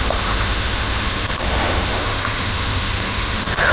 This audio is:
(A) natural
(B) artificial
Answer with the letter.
B